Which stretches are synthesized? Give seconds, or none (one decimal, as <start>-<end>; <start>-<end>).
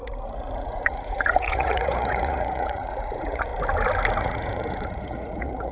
0.0-3.5; 4.2-5.7